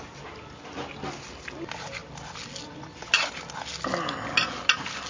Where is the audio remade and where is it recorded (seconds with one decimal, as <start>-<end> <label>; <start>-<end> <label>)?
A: 0.0-5.1 recorded